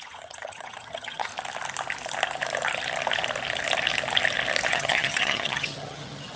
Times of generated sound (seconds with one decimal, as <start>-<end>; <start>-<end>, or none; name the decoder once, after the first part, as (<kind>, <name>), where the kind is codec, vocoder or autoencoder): 0.0-1.3 (vocoder, HiFi-GAN); 4.7-6.4

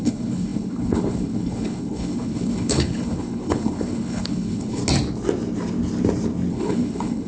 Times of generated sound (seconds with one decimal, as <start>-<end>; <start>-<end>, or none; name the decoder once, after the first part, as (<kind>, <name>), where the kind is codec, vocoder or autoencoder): 0.0-4.8 (codec, HILCodec); 6.5-7.3

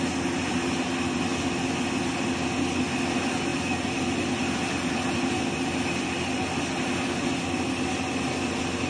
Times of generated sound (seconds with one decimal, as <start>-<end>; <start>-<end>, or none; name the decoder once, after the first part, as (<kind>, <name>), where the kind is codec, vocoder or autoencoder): none

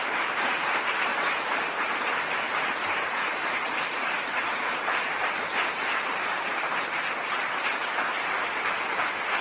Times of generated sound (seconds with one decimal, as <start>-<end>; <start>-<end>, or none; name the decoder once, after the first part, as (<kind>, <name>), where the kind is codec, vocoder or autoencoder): 0.0-1.1 (vocoder, BigVGAN v2); 2.2-9.4

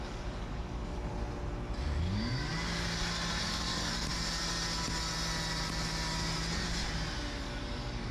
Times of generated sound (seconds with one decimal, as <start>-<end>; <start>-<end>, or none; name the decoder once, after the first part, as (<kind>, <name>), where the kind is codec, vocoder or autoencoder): 0.0-1.1 (codec, DAC); 2.0-2.5; 3.4-4.1; 7.4-8.1

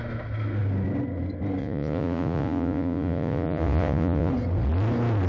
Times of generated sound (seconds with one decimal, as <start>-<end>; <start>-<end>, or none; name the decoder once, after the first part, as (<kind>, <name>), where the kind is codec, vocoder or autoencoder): 1.6-4.3 (vocoder, Vocos)

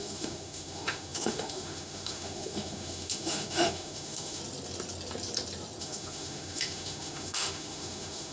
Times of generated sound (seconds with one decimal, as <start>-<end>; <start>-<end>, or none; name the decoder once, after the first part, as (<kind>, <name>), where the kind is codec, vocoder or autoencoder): 0.0-4.4 (autoencoder, DAC-VAE); 5.8-8.3

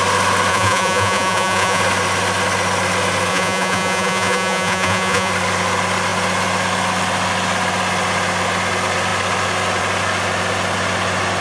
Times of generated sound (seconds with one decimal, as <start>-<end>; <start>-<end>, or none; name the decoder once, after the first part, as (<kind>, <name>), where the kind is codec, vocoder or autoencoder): 0.5-1.8 (vocoder, Vocos); 3.3-5.3